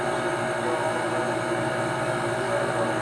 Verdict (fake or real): real